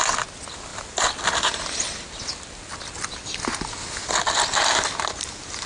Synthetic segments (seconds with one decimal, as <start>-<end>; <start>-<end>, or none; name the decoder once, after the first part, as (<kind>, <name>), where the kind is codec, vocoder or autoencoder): none